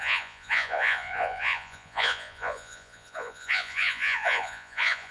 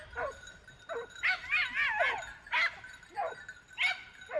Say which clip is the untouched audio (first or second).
second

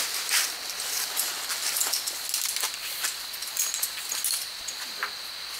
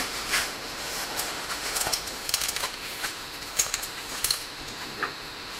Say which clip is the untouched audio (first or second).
first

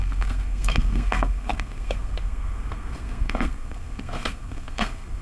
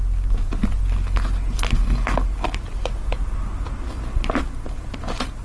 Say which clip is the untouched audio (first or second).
second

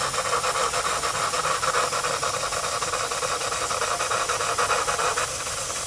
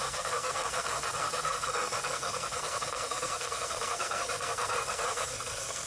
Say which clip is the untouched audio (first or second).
first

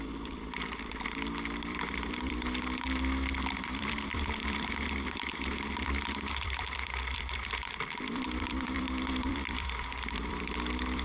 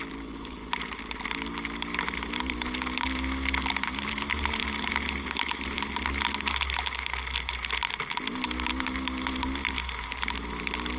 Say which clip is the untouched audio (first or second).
second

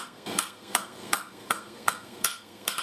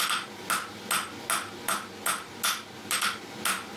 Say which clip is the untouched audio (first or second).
second